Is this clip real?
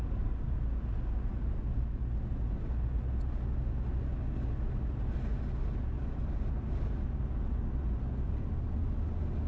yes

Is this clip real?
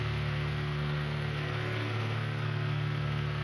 no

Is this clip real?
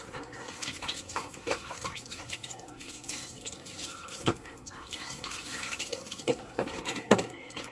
no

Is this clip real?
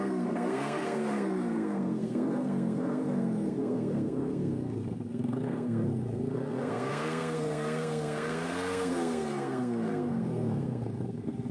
no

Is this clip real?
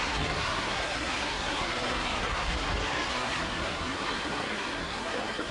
no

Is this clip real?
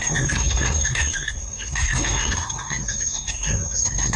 no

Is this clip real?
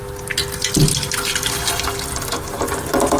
yes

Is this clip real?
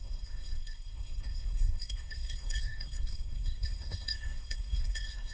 no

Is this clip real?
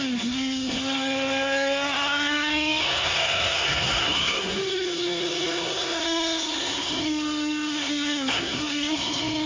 no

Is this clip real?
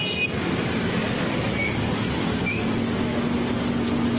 yes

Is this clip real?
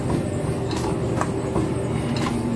yes